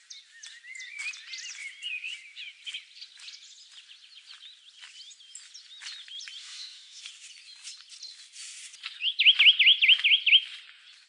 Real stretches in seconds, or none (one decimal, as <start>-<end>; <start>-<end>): 0.0-6.4; 7.0-11.1